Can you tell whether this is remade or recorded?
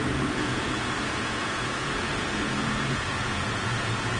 remade